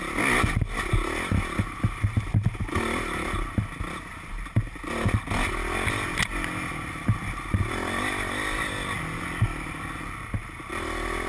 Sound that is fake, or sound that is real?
real